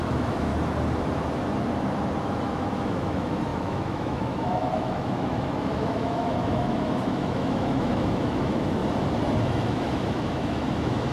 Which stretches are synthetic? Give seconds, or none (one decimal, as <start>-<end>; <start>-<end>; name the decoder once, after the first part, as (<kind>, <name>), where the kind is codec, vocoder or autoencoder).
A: 0.0-0.5 (autoencoder, DAC-VAE); 2.2-8.8; 9.4-11.1